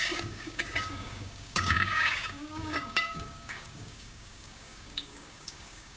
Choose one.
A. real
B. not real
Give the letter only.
B